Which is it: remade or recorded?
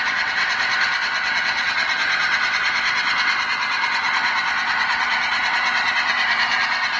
remade